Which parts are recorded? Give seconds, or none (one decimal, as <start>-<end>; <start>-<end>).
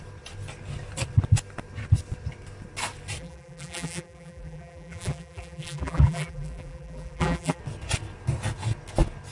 0.0-3.2; 7.6-9.3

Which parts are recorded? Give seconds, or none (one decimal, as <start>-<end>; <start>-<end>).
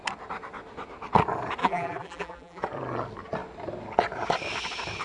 0.0-1.6; 2.6-5.0